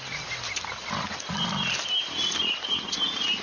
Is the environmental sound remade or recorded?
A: recorded